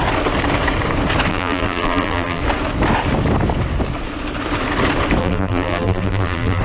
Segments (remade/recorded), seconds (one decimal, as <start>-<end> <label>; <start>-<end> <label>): 0.0-1.3 recorded; 1.3-2.4 remade; 2.4-5.2 recorded; 5.2-6.6 remade